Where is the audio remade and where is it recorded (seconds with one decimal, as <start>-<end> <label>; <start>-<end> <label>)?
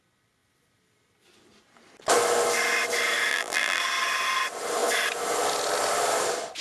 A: 0.0-3.3 recorded; 3.3-3.8 remade; 3.8-6.6 recorded